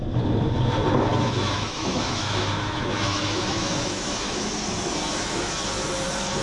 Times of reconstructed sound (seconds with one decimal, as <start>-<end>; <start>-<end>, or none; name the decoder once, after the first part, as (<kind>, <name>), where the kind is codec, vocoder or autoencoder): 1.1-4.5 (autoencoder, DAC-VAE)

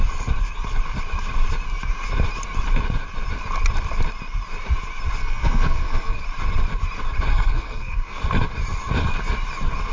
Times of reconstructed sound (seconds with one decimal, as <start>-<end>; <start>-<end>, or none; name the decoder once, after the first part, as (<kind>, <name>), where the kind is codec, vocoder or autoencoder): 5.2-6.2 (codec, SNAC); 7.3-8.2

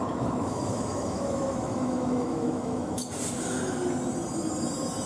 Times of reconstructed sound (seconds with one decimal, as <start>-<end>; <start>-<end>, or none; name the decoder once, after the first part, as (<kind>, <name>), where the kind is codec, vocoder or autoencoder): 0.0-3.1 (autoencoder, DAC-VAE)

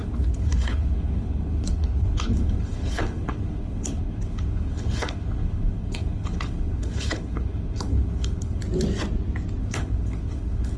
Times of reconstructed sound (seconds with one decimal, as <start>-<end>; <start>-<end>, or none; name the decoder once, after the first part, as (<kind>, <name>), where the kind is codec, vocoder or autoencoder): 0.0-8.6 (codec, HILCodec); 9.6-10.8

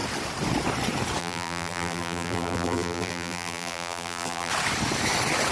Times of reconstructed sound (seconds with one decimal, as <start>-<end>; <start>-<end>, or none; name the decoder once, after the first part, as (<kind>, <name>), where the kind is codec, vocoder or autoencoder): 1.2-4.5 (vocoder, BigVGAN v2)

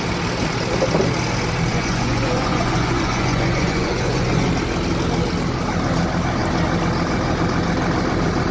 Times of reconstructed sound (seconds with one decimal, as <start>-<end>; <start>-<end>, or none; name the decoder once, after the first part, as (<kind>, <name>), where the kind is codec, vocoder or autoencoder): 1.7-4.5 (vocoder, Vocos)

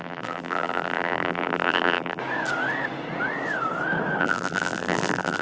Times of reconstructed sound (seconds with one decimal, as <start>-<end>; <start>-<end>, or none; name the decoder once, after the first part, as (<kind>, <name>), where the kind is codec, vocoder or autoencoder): 0.0-2.2 (vocoder, BigVGAN v2); 4.2-5.4

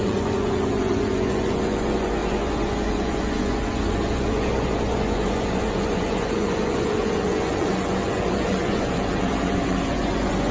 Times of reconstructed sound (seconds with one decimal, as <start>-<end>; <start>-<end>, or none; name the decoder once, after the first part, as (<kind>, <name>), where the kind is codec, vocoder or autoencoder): 0.0-10.5 (vocoder, Vocos)